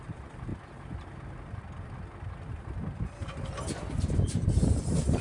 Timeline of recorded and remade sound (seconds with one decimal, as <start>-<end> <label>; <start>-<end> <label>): 0.0-0.5 remade; 0.5-2.5 recorded; 2.5-3.3 remade; 3.3-3.9 recorded; 3.9-5.2 remade